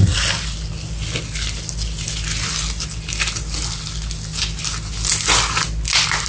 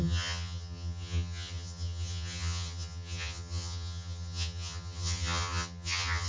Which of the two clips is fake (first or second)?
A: second